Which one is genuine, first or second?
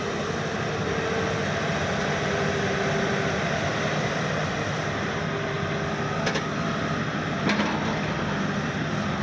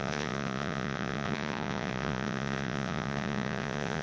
first